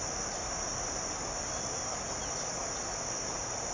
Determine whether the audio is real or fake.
real